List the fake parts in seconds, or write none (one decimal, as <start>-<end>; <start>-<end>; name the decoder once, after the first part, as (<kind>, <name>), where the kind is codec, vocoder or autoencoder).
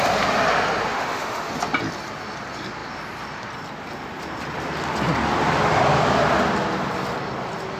0.9-1.5 (autoencoder, DAC-VAE)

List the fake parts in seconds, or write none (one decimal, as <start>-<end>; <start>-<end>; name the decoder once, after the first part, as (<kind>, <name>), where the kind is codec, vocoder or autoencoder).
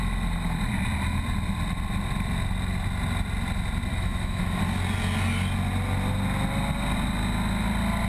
3.9-4.6 (autoencoder, DAC-VAE)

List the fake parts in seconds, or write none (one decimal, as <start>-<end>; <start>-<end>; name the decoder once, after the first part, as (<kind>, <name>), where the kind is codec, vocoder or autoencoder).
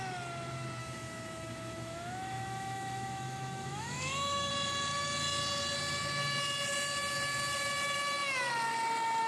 0.8-4.5 (autoencoder, DAC-VAE)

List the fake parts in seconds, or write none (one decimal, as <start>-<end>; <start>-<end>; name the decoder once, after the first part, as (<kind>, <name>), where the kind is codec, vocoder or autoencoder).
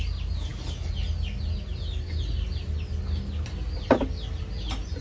none